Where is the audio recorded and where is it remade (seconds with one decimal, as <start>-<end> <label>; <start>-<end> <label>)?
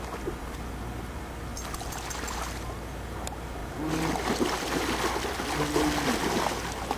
0.0-7.0 recorded